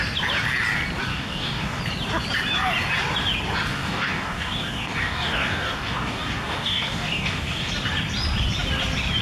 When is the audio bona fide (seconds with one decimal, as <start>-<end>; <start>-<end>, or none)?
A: 0.0-1.1; 1.8-3.7; 7.7-9.2